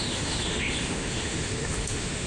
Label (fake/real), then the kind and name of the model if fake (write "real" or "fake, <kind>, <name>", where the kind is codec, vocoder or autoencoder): fake, autoencoder, DAC-VAE